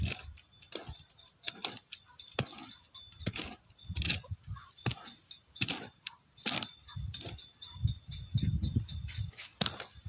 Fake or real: real